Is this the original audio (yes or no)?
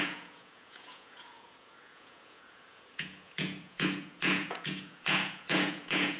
no